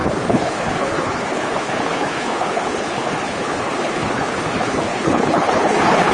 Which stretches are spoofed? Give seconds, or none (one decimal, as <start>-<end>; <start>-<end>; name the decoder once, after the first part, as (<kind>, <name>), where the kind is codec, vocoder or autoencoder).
0.0-6.1 (codec, HILCodec)